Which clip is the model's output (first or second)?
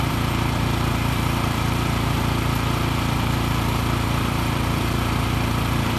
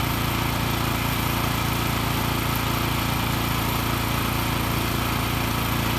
first